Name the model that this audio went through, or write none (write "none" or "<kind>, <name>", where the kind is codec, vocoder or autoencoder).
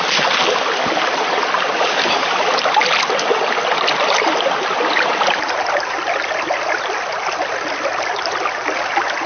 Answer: none